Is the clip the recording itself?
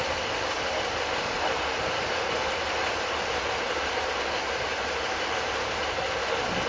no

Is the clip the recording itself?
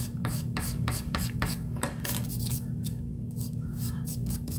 no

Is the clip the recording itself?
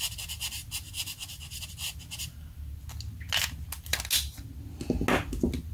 yes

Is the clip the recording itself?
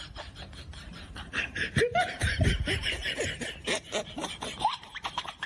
no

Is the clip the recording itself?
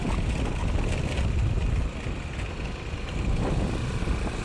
yes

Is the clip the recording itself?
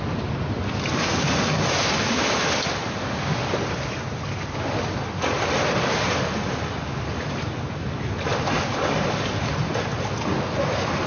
yes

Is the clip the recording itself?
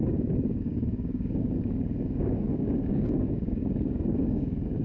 no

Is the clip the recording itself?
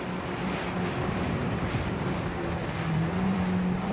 no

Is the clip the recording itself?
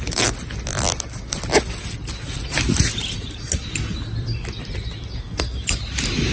yes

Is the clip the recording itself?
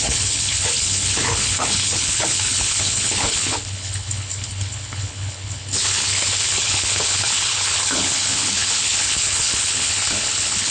no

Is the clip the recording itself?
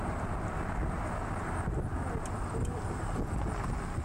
yes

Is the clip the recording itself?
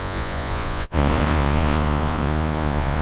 no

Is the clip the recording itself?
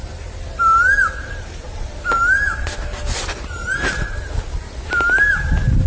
yes